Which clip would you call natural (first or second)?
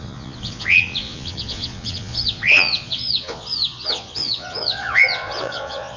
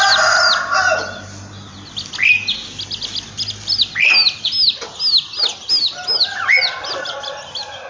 second